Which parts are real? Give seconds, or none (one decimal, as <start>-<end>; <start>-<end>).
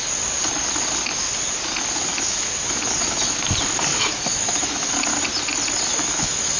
0.0-2.1; 3.3-3.9; 4.9-5.9